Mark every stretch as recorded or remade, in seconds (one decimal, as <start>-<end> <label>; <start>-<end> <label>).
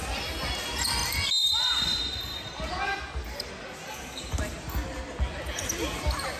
0.0-6.4 recorded